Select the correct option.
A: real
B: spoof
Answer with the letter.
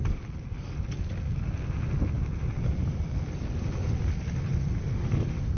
A